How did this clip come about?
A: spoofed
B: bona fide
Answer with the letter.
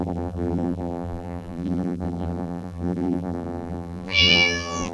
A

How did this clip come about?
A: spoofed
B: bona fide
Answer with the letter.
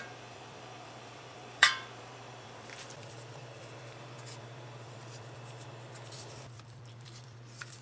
A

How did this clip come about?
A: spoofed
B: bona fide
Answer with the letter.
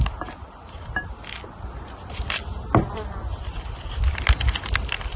B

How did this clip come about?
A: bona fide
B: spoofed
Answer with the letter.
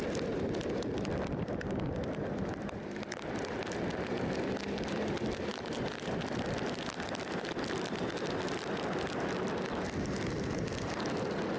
B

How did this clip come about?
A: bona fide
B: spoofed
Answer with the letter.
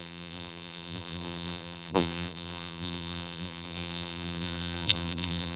B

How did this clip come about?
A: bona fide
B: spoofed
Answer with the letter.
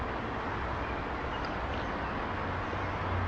A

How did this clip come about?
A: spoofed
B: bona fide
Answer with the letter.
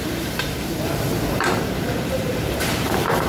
A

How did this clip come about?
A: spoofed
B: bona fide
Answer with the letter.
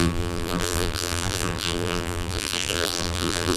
A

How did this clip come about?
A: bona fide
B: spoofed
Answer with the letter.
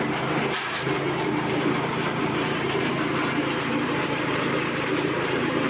B